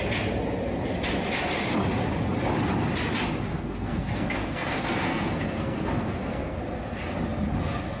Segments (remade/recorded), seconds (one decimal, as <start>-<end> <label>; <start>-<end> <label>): 0.0-3.5 recorded; 3.5-6.6 remade; 6.6-8.0 recorded

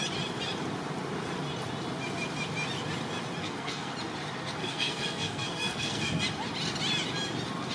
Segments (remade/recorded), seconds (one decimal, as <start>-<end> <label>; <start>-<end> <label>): 0.0-3.4 recorded; 3.4-3.9 remade; 3.9-4.6 recorded; 4.6-6.2 remade; 6.2-7.7 recorded

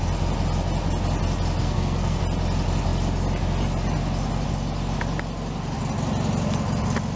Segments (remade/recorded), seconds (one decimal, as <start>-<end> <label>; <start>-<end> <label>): 0.0-1.6 recorded; 1.6-2.2 remade; 2.2-7.2 recorded